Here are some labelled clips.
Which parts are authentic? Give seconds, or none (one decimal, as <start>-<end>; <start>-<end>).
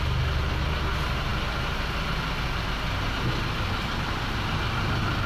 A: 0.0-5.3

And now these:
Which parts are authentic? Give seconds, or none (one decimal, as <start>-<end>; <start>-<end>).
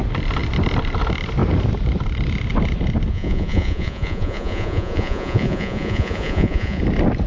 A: 0.0-3.1; 6.8-7.3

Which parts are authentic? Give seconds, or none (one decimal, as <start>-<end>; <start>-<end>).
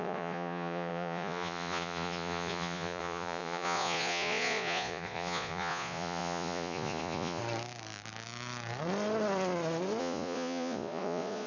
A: 7.4-10.0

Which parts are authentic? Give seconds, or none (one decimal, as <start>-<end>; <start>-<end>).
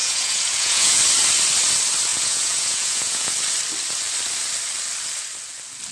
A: 1.0-2.1; 3.3-5.9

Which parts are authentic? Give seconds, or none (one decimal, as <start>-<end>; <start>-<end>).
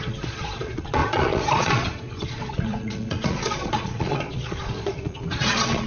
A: none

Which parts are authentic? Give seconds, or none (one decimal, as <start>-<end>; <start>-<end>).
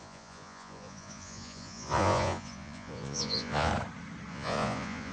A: 3.7-4.3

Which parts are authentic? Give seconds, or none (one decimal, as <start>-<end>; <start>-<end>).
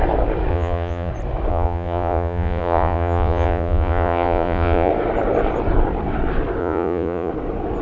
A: 0.0-0.5; 1.1-1.5; 4.9-6.6; 7.3-7.8